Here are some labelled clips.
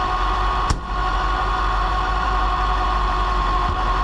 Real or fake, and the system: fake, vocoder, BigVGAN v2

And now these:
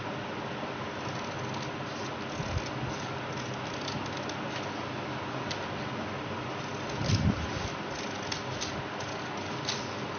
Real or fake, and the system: real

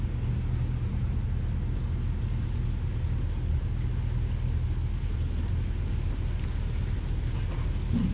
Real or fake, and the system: real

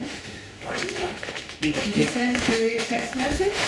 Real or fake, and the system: fake, autoencoder, DAC-VAE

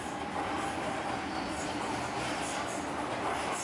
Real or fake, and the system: real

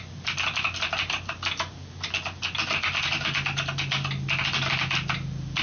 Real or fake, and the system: real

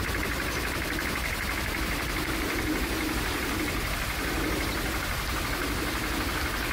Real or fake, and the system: real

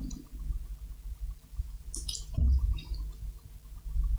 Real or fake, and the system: real